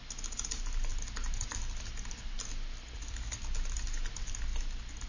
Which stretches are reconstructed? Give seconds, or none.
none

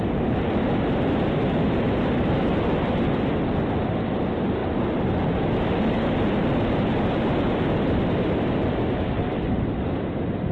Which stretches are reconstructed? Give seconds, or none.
none

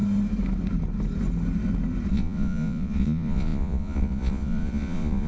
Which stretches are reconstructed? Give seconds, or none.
2.1-5.3 (vocoder, Vocos)

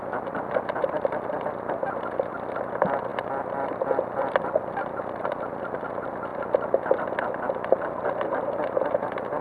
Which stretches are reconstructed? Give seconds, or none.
none